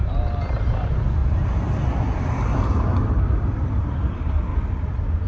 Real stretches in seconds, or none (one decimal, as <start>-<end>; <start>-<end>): 1.2-3.0; 4.5-5.3

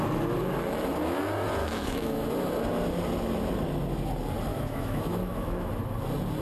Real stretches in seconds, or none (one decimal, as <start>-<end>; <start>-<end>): 0.0-1.6; 2.3-4.5; 5.7-6.4

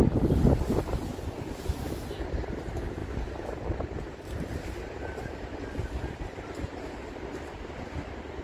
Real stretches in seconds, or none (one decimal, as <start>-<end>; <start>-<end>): 0.0-8.4

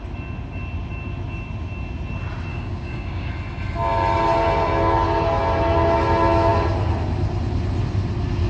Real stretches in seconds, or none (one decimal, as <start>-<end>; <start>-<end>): 0.0-2.5; 3.3-8.5